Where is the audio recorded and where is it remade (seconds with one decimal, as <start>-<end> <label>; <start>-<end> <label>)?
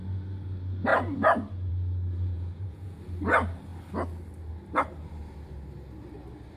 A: 0.0-2.3 recorded; 2.3-3.0 remade; 3.0-6.6 recorded